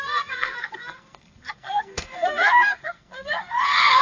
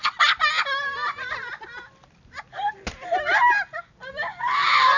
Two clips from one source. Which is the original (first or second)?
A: second